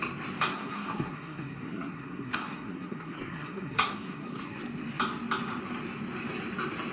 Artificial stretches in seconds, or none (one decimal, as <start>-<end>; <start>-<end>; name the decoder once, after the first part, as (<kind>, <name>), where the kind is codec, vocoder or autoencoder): 0.5-4.6 (codec, SNAC)